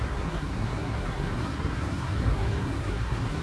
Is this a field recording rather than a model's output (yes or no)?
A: no